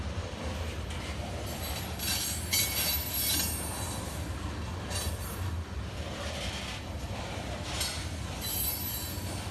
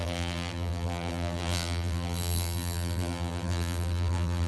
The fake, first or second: second